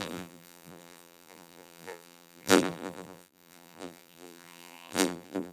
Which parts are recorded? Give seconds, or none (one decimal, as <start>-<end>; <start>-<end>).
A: none